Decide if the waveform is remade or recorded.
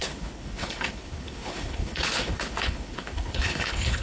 remade